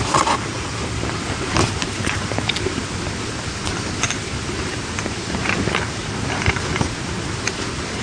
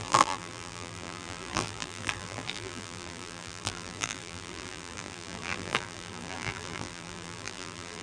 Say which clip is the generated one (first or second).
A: second